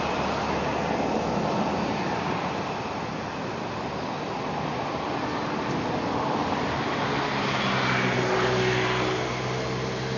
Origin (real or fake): real